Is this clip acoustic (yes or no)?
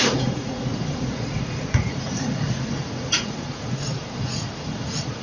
no